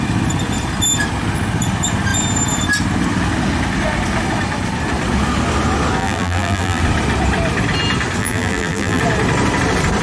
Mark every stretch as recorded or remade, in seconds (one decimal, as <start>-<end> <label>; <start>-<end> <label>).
0.0-6.0 recorded; 6.0-6.8 remade; 6.8-8.2 recorded; 8.2-9.0 remade; 9.0-10.0 recorded